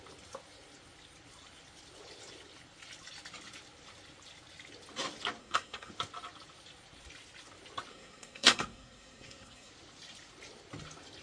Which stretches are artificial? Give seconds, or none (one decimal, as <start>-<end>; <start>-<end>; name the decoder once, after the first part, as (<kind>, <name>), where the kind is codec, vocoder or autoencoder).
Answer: 5.4-5.9 (codec, SNAC); 7.9-9.7